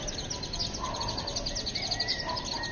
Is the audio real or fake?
real